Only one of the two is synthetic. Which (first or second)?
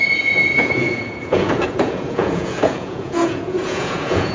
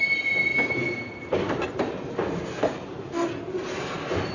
first